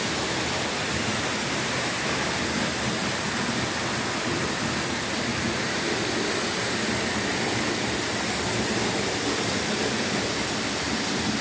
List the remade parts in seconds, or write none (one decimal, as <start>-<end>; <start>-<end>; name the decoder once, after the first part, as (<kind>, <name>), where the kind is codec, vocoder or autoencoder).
1.1-2.3 (vocoder, BigVGAN v2); 3.0-3.5; 5.3-5.8